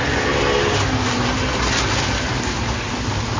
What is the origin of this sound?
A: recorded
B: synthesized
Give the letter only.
A